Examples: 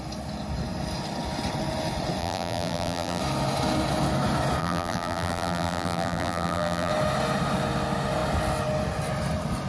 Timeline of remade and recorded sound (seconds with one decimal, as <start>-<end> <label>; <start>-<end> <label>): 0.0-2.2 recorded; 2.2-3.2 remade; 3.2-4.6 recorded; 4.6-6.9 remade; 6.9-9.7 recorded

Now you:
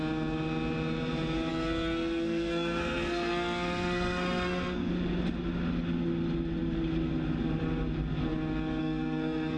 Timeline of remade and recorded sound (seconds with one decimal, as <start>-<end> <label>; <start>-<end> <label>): 0.0-1.5 recorded; 1.5-4.9 remade; 4.9-8.8 recorded; 8.8-9.6 remade

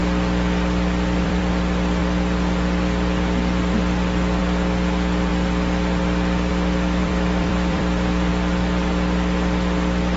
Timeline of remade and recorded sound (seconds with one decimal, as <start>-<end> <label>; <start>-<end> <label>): 0.0-1.4 remade; 1.4-7.0 recorded; 7.0-8.3 remade; 8.3-10.2 recorded

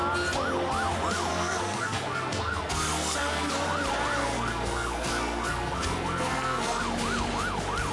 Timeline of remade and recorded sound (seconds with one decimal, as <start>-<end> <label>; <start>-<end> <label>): 0.0-1.3 recorded; 1.3-3.5 remade; 3.5-4.2 recorded; 4.2-6.8 remade; 6.8-7.9 recorded

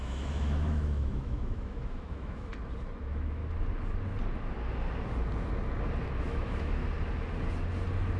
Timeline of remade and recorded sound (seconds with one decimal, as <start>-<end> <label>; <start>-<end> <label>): 0.0-2.5 remade; 2.5-3.0 recorded; 3.0-3.4 remade; 3.4-6.2 recorded; 6.2-6.8 remade; 6.8-8.2 recorded

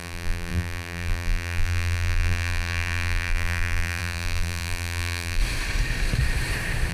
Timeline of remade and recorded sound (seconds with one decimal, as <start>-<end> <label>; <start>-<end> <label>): 0.0-5.4 remade; 5.4-6.9 recorded

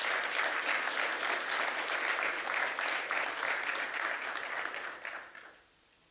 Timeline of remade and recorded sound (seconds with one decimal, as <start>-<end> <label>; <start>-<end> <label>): 0.0-6.1 recorded

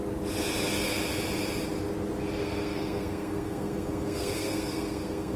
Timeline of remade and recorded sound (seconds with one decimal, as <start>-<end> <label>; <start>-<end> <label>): 0.0-2.4 recorded; 2.4-5.4 remade